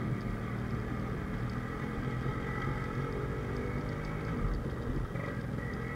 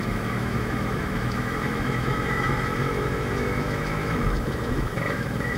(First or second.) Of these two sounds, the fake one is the second